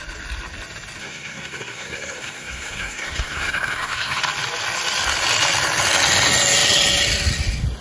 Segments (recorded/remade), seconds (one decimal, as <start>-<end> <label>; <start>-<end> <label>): 0.0-1.0 recorded; 1.0-4.2 remade; 4.2-7.8 recorded